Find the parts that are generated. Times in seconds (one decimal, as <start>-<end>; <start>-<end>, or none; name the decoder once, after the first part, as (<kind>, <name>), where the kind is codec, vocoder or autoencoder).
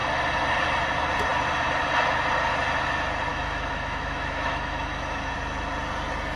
3.3-5.3 (autoencoder, DAC-VAE)